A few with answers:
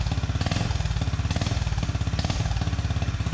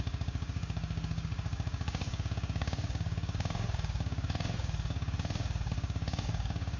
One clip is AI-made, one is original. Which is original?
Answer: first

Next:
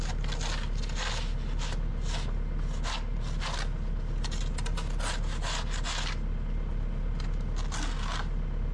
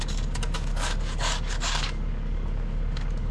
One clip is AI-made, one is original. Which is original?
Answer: first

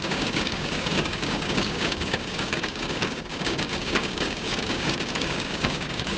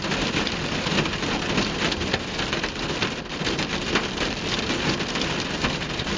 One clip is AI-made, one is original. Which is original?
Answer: second